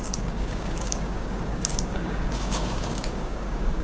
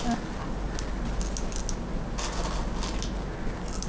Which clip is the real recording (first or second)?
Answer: second